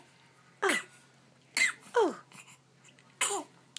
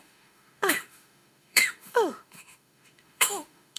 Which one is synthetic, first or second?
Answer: second